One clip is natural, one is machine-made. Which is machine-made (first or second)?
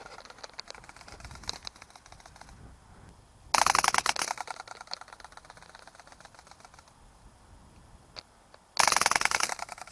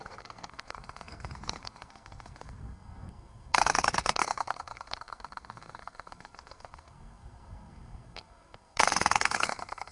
second